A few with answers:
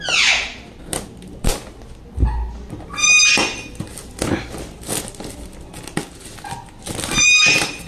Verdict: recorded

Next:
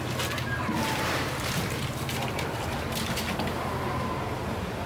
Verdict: recorded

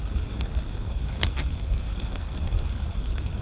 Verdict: remade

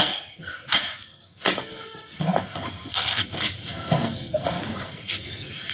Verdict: remade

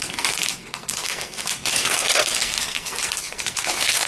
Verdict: remade